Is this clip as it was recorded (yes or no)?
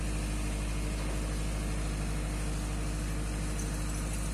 yes